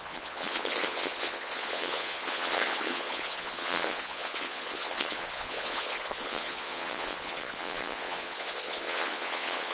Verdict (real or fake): fake